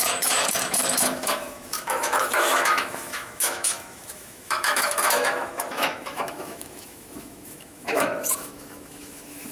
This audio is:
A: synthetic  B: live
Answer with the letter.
A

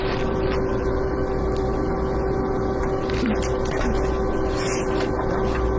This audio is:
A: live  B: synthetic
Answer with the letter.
A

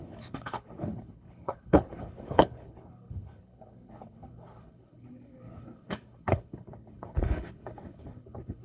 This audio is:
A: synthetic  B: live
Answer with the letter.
A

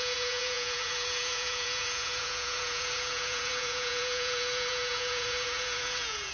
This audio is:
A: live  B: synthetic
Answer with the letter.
B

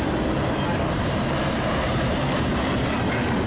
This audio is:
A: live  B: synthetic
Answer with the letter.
A